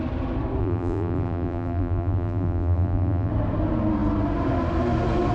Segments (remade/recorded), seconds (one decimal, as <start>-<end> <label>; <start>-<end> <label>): 0.0-0.6 recorded; 0.6-3.3 remade; 3.3-5.3 recorded

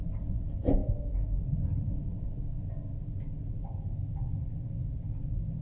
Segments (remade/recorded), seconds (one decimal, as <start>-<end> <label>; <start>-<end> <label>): 0.0-0.8 recorded; 0.8-1.4 remade; 1.4-5.6 recorded

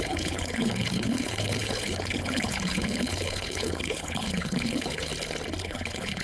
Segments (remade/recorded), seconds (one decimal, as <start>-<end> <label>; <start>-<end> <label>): 0.0-5.1 remade; 5.1-5.6 recorded; 5.6-6.2 remade

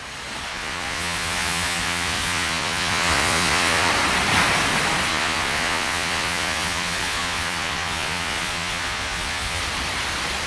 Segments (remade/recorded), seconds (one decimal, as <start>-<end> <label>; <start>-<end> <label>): 0.0-0.5 recorded; 0.5-3.9 remade; 3.9-5.1 recorded; 5.1-9.6 remade; 9.6-10.5 recorded

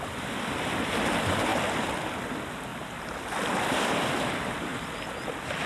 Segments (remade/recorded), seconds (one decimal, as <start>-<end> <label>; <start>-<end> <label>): 0.0-5.7 recorded

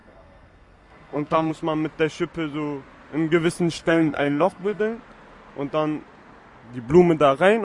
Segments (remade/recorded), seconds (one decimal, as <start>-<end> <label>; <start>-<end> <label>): 0.0-1.5 remade; 1.5-3.8 recorded; 3.8-4.8 remade; 4.8-7.6 recorded

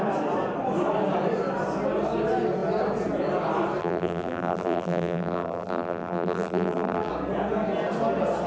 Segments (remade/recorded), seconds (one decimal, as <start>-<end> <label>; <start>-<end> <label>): 0.0-3.8 recorded; 3.8-7.1 remade; 7.1-8.5 recorded